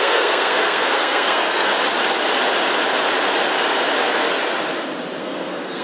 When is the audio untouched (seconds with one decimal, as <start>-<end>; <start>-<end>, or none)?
1.7-5.2